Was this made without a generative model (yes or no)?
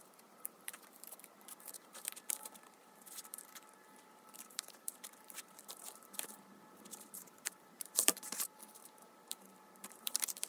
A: no